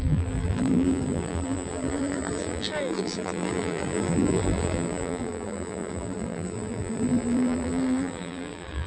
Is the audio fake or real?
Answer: fake